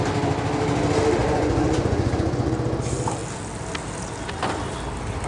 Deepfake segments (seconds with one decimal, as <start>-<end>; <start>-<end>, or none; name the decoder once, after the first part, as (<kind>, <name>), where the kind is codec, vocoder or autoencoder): 1.2-2.5 (vocoder, Vocos)

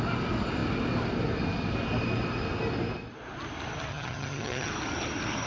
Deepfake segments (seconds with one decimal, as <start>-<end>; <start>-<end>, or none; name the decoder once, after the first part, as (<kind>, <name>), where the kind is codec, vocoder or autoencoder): 3.9-4.7 (vocoder, HiFi-GAN)